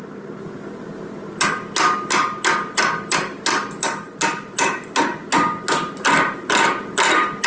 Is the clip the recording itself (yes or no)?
yes